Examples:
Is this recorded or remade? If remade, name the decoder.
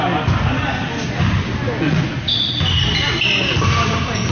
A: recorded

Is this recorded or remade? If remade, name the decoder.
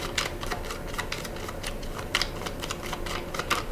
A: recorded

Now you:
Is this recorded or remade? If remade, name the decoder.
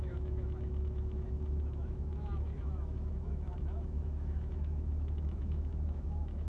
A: remade, autoencoder, DAC-VAE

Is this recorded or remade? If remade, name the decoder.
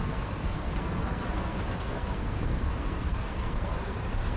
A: remade, codec, SNAC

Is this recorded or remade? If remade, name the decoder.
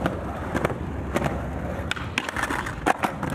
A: recorded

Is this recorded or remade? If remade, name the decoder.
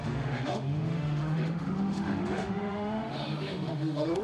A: remade, autoencoder, DAC-VAE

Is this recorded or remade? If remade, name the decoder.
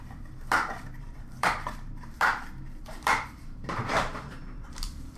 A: remade, vocoder, BigVGAN v2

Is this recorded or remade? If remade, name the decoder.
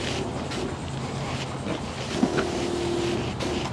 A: recorded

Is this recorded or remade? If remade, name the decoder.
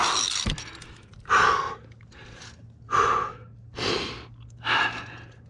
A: recorded